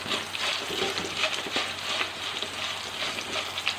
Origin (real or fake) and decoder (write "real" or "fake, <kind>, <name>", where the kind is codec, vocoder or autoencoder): real